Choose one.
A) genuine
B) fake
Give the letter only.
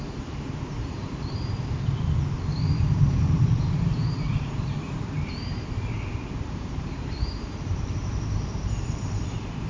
B